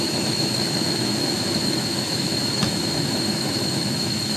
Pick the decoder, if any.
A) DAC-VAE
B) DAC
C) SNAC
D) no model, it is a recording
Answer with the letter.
A